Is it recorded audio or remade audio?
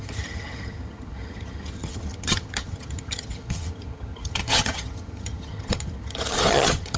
remade